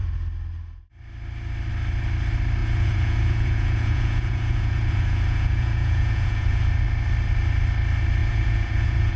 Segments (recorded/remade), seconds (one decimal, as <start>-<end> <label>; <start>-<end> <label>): 0.0-2.6 recorded; 2.6-6.6 remade; 6.6-8.2 recorded; 8.2-9.2 remade